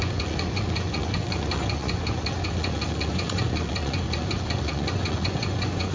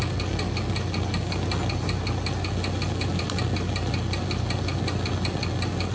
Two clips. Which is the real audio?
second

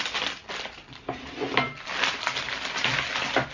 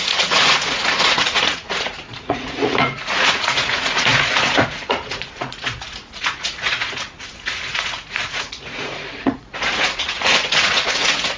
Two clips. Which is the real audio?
first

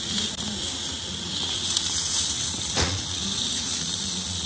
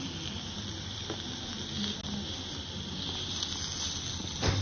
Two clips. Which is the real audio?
second